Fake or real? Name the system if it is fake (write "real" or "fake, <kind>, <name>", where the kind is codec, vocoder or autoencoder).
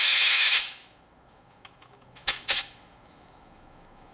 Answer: fake, autoencoder, DAC-VAE